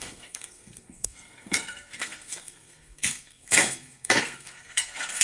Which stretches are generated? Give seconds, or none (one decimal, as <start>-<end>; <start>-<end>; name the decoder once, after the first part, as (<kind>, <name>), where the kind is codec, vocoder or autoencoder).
0.0-5.2 (codec, SNAC)